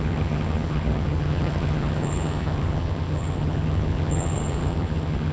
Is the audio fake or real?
fake